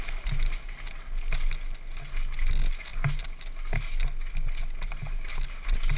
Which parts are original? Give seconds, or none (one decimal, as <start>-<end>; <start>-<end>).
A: 0.0-6.0